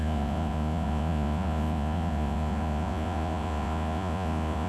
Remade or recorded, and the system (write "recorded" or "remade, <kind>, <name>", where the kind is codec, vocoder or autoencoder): remade, vocoder, Vocos